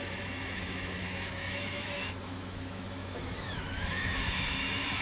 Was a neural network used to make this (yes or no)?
yes